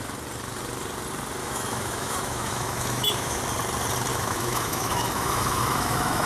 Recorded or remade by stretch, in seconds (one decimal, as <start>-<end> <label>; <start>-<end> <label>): 0.0-1.4 recorded; 1.4-3.4 remade; 3.4-4.1 recorded; 4.1-6.3 remade

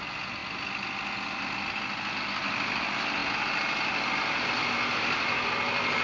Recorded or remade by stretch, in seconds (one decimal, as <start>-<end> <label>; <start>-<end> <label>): 0.0-6.0 recorded